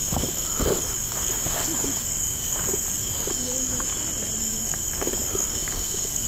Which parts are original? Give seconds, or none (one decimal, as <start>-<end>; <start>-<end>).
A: 3.9-4.4